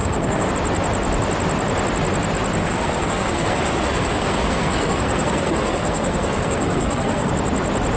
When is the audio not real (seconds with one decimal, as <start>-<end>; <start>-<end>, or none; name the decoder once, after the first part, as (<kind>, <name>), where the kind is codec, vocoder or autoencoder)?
0.0-0.5 (codec, SNAC); 2.6-7.3